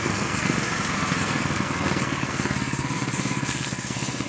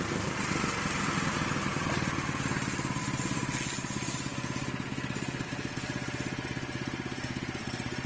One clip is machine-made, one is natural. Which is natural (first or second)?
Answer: second